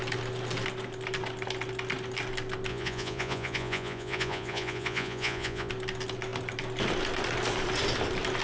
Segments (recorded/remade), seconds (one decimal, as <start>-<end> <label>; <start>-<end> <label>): 0.0-2.7 recorded; 2.7-5.7 remade; 5.7-8.4 recorded